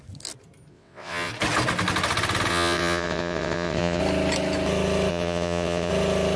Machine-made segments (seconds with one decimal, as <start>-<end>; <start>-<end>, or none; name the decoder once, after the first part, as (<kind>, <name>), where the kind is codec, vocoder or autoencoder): 0.7-1.3 (vocoder, WaveNeXt); 2.5-4.0; 5.1-5.9